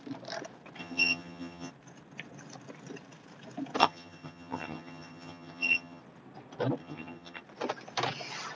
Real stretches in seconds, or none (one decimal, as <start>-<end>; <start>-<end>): 0.0-0.8; 1.7-3.8; 6.0-6.8; 7.4-8.6